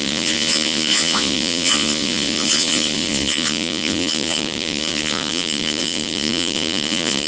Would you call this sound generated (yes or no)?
yes